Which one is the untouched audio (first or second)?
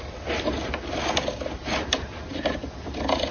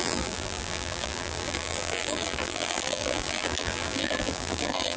first